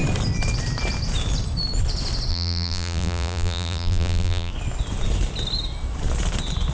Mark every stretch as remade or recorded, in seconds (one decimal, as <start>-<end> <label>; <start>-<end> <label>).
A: 0.0-2.3 recorded; 2.3-4.5 remade; 4.5-6.7 recorded